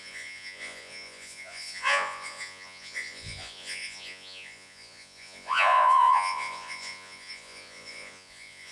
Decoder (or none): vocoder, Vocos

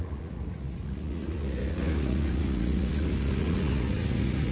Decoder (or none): vocoder, Vocos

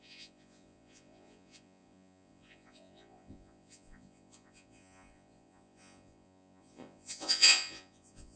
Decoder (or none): vocoder, Vocos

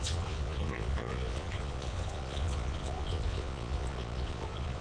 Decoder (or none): vocoder, Vocos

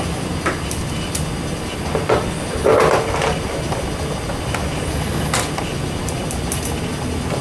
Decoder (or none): none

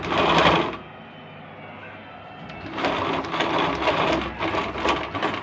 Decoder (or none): none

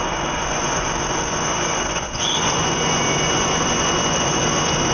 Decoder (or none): vocoder, Vocos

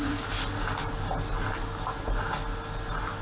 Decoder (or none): none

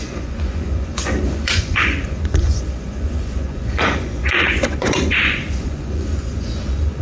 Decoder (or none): vocoder, Vocos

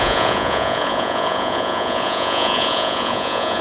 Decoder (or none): vocoder, Vocos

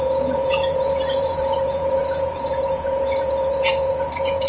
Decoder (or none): vocoder, Vocos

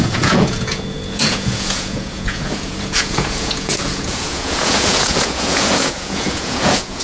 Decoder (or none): vocoder, Vocos